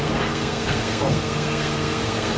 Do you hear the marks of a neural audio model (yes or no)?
yes